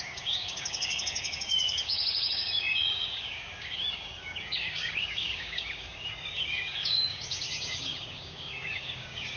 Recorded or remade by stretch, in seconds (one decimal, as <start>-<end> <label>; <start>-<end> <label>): 0.0-9.4 remade